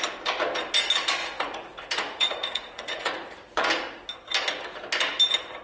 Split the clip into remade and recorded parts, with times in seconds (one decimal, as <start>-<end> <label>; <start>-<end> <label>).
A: 0.0-1.2 recorded; 1.2-3.7 remade; 3.7-5.6 recorded